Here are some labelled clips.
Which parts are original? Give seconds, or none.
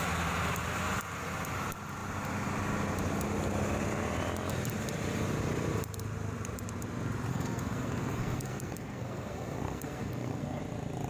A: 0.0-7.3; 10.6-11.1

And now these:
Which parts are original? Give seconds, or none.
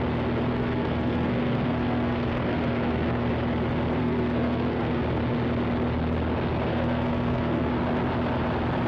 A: 0.0-0.5; 3.3-4.0; 5.0-6.7; 7.7-8.9